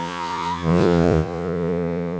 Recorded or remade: remade